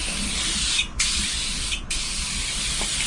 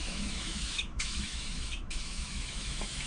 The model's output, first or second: second